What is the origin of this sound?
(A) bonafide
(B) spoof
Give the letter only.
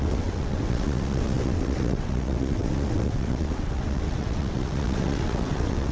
B